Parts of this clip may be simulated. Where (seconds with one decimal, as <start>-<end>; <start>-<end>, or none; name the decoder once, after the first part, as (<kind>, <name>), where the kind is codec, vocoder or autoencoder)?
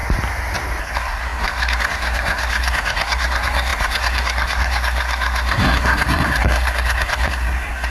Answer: 0.8-7.9 (codec, SNAC)